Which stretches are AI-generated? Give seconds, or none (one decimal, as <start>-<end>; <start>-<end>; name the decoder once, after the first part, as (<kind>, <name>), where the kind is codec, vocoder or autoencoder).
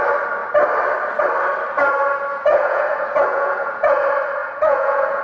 2.3-4.0 (vocoder, Vocos); 4.4-5.2